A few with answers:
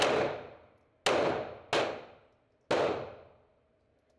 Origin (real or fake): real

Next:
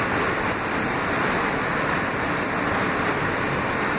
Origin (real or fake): fake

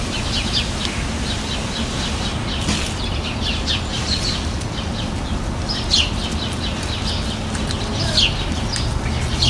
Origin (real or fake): real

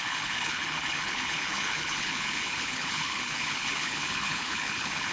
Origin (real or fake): fake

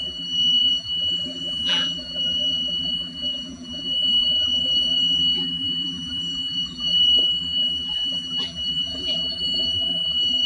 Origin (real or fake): fake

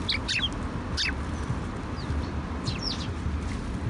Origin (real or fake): real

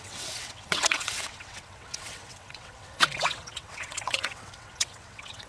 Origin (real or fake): fake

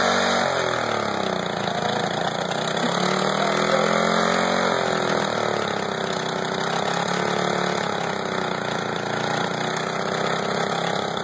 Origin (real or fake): real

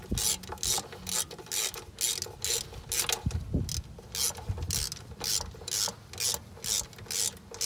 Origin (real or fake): real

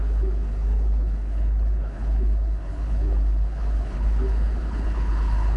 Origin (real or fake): fake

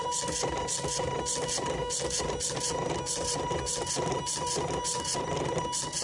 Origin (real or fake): real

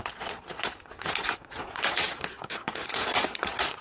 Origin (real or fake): fake